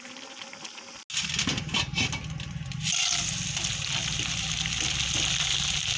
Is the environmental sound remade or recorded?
recorded